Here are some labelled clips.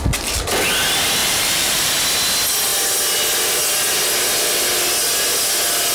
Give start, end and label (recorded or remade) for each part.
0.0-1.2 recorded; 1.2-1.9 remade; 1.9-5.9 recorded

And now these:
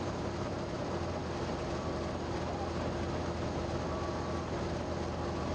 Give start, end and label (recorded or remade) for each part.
0.0-5.5 recorded

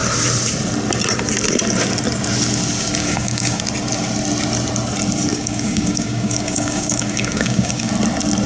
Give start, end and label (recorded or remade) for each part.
0.0-3.0 recorded; 3.0-3.6 remade; 3.6-5.3 recorded; 5.3-7.9 remade; 7.9-8.5 recorded